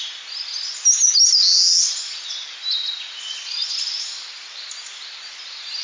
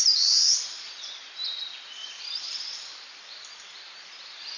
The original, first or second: first